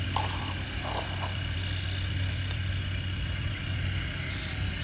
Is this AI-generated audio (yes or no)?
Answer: yes